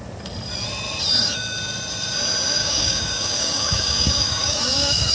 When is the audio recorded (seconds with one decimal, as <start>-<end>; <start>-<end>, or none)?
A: 0.0-2.6